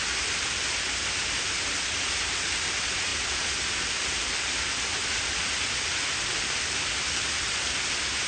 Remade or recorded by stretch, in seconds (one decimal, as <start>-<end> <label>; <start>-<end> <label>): 0.0-8.3 recorded